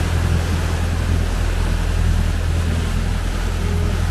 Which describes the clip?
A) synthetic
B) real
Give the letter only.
B